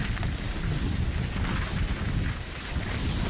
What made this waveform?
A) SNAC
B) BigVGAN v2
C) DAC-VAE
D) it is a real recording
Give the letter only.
D